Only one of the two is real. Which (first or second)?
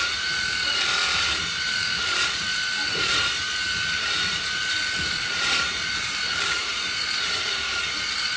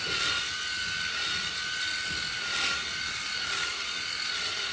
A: second